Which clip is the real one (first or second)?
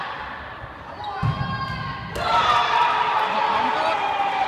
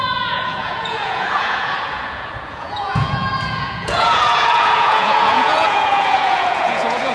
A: first